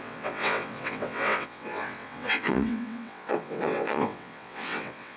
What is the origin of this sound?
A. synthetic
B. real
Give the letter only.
A